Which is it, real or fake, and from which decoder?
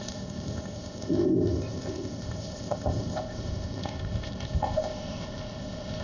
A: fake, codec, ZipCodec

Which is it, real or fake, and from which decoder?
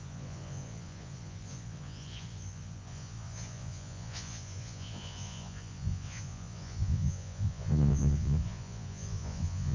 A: fake, vocoder, Vocos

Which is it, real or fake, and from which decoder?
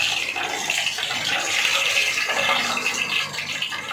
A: real